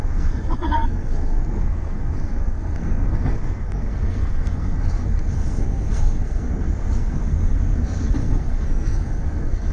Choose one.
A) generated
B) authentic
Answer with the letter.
A